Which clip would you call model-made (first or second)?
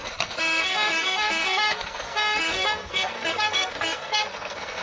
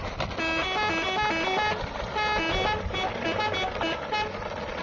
first